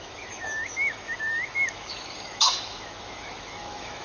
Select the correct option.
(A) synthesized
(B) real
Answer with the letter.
A